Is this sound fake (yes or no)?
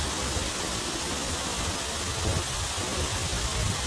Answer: no